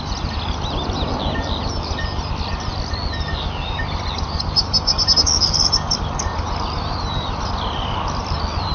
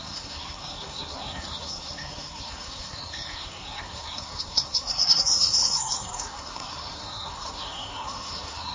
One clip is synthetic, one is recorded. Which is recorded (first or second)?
first